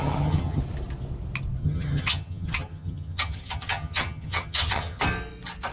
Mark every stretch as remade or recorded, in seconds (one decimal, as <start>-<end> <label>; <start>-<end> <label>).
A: 0.0-0.6 remade; 0.6-1.6 recorded; 1.6-5.0 remade; 5.0-5.7 recorded

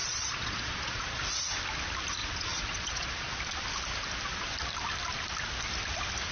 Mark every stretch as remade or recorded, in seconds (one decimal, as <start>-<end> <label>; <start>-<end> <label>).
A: 0.0-1.2 remade; 1.2-2.2 recorded; 2.2-3.3 remade; 3.3-6.3 recorded

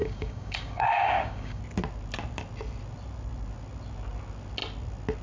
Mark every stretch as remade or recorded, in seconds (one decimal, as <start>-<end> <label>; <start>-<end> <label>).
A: 0.0-1.6 remade; 1.6-5.2 recorded

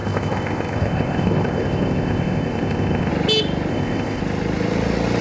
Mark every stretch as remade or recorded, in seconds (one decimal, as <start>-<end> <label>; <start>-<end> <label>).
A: 0.0-3.1 remade; 3.1-3.7 recorded; 3.7-4.2 remade; 4.2-5.2 recorded

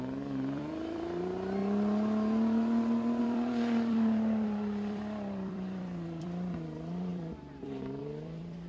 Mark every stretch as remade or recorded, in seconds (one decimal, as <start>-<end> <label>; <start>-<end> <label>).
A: 0.0-1.6 remade; 1.6-3.2 recorded; 3.2-8.7 remade

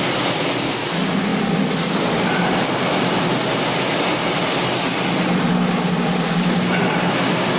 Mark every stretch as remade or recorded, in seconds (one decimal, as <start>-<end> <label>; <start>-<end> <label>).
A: 0.0-7.6 recorded